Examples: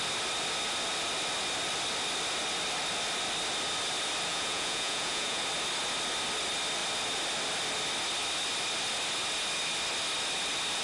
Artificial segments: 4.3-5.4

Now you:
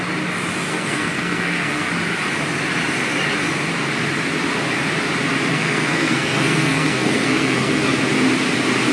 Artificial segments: 0.7-1.9; 5.5-7.9

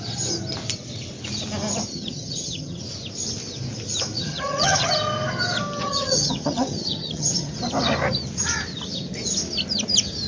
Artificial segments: 1.9-2.8; 4.2-4.9; 5.8-7.7